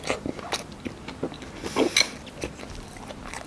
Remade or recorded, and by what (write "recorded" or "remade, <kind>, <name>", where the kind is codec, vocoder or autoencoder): recorded